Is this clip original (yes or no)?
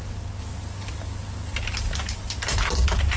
yes